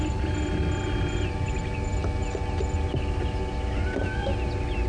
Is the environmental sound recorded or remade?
recorded